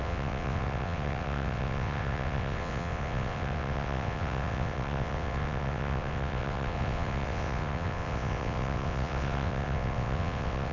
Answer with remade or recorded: remade